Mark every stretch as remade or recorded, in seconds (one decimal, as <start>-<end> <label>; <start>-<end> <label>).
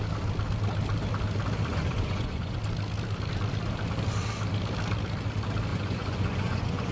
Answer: 0.0-1.7 recorded; 1.7-2.6 remade; 2.6-5.7 recorded; 5.7-6.9 remade